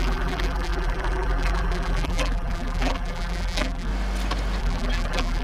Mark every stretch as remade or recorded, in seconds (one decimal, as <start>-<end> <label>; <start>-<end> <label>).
0.0-3.9 remade; 3.9-4.6 recorded; 4.6-5.4 remade